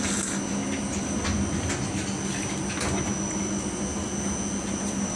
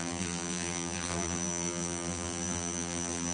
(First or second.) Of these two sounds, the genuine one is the first